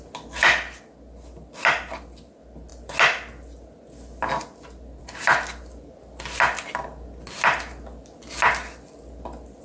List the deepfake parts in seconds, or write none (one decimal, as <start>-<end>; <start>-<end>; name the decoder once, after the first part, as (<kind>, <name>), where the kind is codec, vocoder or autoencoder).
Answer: none